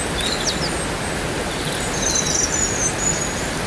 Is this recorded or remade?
recorded